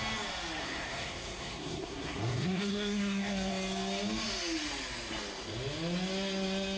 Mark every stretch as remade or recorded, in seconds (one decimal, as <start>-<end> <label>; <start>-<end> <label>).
0.0-0.6 recorded; 0.6-3.5 remade; 3.5-6.8 recorded